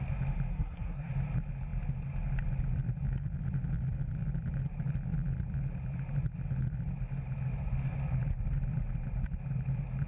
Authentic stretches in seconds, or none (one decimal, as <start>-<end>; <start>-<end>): 0.0-0.5; 1.1-10.1